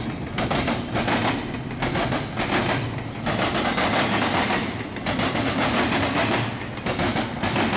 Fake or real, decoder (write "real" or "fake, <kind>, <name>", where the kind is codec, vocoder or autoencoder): real